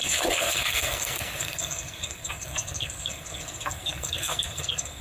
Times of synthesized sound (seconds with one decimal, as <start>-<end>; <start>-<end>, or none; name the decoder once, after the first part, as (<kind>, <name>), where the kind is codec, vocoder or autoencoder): 0.0-5.0 (codec, SNAC)